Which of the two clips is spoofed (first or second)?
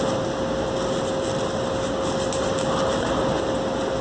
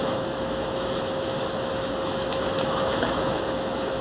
second